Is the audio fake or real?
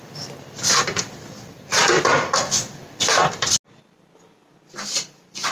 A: real